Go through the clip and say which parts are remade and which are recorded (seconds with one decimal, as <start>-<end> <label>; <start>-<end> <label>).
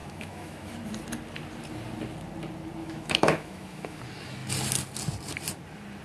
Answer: 0.0-0.7 remade; 0.7-2.8 recorded; 2.8-4.0 remade; 4.0-6.0 recorded